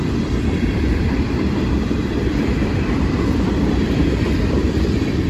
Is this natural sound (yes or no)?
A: no